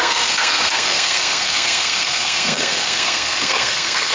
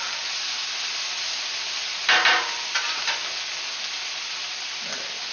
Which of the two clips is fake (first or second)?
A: first